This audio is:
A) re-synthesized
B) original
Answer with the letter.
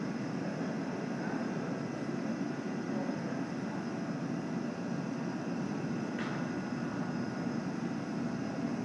B